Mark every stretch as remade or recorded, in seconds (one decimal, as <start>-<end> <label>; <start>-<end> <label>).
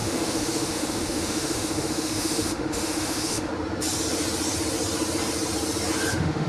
0.0-3.5 remade; 3.5-6.1 recorded; 6.1-6.5 remade